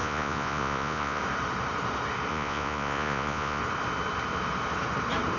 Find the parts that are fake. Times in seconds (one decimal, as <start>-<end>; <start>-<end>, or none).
0.0-1.2; 2.3-3.6